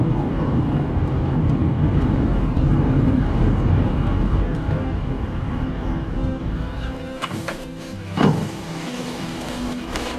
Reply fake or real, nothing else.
fake